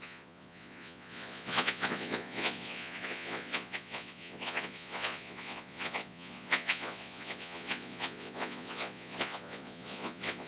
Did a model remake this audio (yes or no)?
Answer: yes